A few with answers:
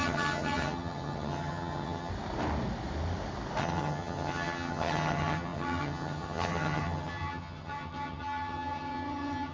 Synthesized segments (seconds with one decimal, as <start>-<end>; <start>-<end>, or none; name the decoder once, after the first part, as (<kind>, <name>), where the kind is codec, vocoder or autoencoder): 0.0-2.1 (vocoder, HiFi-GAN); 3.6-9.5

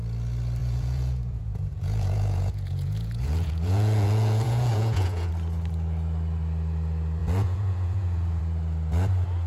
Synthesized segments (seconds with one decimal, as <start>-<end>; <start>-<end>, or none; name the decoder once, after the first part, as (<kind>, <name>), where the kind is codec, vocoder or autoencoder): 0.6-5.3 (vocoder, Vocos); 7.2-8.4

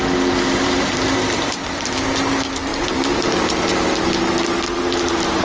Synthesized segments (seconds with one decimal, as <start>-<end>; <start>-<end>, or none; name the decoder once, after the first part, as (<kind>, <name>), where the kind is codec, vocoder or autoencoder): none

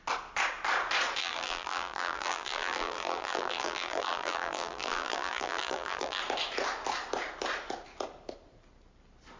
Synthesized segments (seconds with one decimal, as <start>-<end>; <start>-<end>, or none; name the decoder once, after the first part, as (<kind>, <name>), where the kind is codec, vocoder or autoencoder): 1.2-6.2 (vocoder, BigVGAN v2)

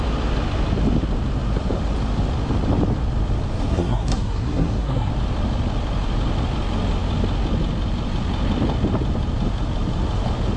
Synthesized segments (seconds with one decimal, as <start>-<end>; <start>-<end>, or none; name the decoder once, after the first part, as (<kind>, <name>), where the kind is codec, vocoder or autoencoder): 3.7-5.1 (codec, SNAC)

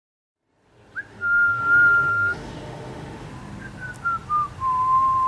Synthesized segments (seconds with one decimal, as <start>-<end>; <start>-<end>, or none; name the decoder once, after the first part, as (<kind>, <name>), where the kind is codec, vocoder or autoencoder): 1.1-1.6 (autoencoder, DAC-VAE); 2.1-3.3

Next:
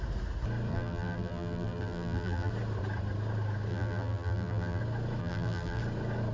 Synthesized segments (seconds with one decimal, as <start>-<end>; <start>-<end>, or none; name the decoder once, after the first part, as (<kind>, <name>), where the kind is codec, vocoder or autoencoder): 0.7-2.5 (vocoder, BigVGAN v2); 3.7-4.8; 5.2-5.8

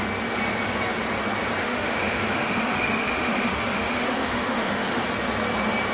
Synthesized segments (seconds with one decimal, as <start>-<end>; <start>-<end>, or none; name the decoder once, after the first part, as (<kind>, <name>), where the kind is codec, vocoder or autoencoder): 1.6-5.0 (autoencoder, DAC-VAE)